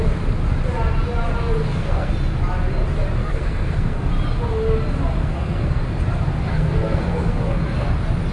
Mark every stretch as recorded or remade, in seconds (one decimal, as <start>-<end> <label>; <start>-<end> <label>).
0.0-1.6 recorded; 1.6-2.1 remade; 2.1-3.2 recorded; 3.2-4.1 remade; 4.1-5.2 recorded; 5.2-5.8 remade; 5.8-6.5 recorded; 6.5-7.6 remade; 7.6-8.3 recorded